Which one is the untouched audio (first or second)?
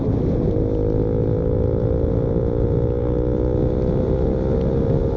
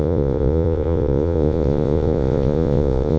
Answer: first